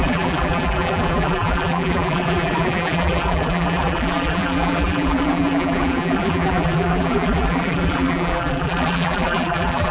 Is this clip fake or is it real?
fake